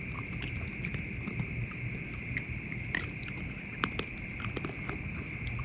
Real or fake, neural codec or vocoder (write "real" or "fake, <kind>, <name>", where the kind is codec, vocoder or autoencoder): real